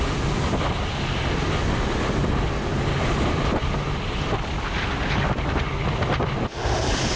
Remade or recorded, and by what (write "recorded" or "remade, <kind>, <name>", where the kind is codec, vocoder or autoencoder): recorded